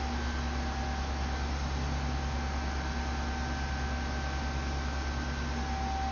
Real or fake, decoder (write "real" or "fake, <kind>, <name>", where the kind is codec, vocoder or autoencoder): real